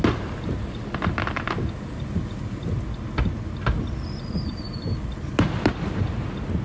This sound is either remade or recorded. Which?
recorded